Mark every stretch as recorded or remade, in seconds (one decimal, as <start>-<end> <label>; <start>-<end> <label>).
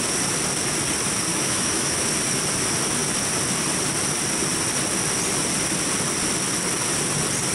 0.0-1.3 recorded; 1.3-2.1 remade; 2.1-7.5 recorded